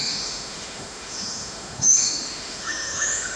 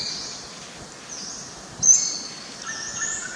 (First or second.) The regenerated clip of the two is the first